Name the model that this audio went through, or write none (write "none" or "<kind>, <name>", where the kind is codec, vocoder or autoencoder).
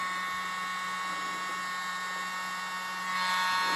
none